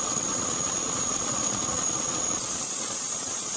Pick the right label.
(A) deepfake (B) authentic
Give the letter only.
A